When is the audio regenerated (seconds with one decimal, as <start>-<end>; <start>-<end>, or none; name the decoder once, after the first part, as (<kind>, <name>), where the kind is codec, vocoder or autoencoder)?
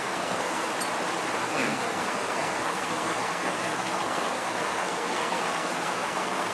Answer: 0.0-0.7 (codec, SNAC); 1.4-6.5